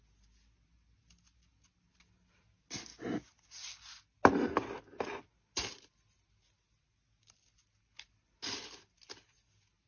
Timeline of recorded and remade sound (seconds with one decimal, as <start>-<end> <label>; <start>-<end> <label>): 0.0-9.9 recorded